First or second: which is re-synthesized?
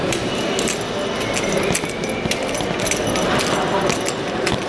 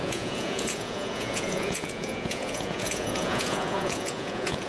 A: second